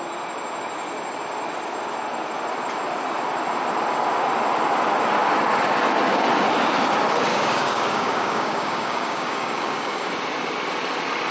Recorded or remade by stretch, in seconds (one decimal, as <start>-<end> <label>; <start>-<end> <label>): 0.0-7.3 recorded; 7.3-10.1 remade; 10.1-11.3 recorded